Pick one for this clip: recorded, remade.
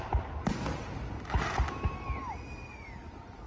recorded